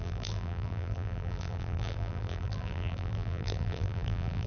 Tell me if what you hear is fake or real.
fake